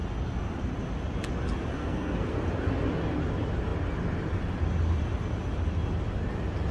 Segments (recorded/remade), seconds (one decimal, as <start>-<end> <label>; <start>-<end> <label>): 0.0-1.8 recorded; 1.8-2.4 remade; 2.4-6.7 recorded